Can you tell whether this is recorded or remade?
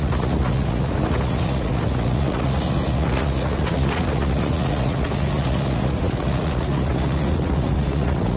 remade